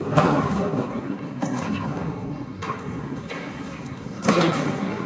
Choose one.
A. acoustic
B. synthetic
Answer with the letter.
B